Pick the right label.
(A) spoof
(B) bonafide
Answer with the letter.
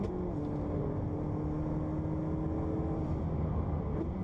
B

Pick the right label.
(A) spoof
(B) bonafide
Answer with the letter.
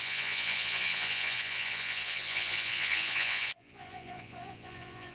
A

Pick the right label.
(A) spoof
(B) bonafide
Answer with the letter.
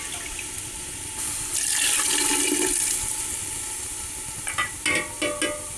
B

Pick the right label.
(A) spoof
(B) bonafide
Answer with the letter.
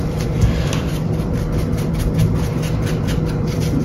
A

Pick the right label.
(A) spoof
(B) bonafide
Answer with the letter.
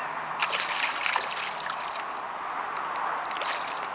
B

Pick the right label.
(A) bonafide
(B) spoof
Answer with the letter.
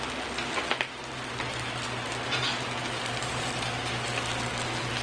A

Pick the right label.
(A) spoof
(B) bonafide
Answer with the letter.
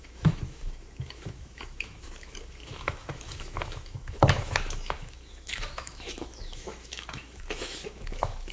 A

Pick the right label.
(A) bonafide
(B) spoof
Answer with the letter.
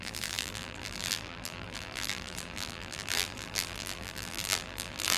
B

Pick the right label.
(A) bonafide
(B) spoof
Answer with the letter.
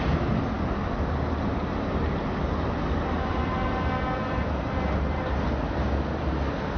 A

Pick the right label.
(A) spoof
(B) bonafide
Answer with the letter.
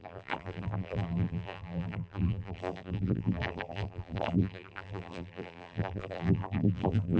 A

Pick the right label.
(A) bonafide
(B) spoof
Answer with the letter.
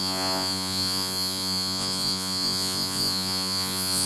B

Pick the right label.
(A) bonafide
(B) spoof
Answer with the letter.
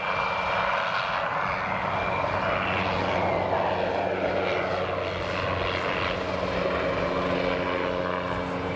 A